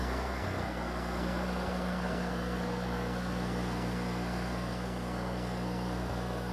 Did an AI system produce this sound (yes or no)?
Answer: yes